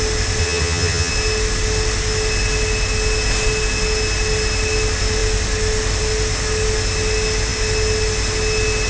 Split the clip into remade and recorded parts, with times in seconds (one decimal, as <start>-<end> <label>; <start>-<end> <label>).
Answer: 0.0-0.4 recorded; 0.4-1.1 remade; 1.1-8.9 recorded